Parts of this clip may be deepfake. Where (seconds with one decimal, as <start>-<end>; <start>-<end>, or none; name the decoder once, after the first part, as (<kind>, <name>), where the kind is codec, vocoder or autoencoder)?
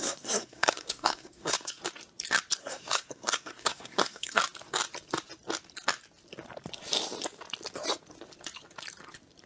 0.0-1.8 (codec, SNAC); 2.6-4.4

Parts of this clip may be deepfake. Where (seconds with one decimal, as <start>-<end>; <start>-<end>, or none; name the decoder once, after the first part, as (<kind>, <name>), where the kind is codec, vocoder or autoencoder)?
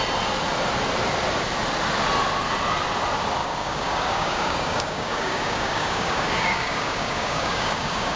3.4-8.2 (codec, DAC)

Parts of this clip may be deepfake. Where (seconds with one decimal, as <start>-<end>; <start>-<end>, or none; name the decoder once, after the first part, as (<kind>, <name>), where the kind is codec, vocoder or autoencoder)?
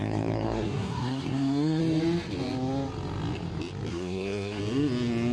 0.0-1.8 (codec, SNAC); 3.9-4.6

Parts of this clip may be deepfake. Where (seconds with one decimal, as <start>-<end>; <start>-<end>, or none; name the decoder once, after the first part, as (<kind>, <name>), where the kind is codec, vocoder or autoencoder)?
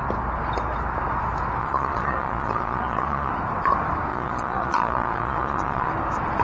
1.6-3.3 (vocoder, Vocos); 4.1-5.9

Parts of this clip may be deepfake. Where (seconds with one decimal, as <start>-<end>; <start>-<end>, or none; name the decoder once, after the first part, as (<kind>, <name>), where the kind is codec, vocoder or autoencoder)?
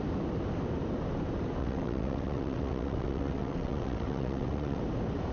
1.6-4.8 (vocoder, WaveNeXt)